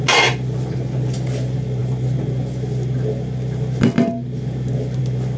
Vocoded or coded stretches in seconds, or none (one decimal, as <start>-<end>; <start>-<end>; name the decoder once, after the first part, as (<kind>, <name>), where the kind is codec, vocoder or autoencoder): none